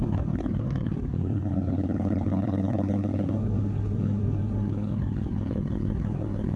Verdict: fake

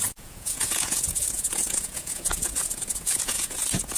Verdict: fake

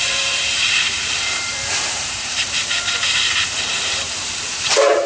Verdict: fake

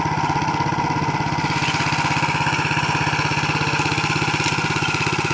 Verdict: real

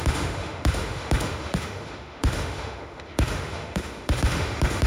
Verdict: fake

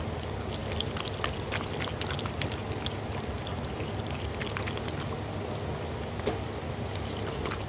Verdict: real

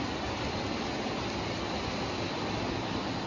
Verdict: real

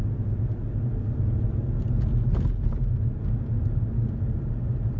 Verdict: real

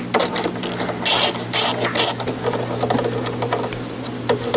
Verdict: real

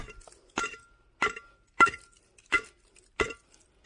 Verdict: real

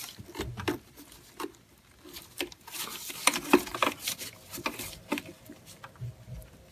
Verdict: real